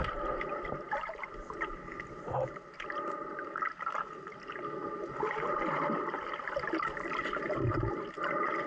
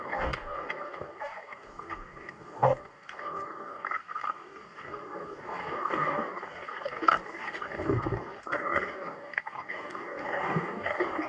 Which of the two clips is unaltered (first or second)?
first